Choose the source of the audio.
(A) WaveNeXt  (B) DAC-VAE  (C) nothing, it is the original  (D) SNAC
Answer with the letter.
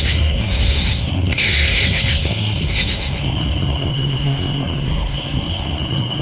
D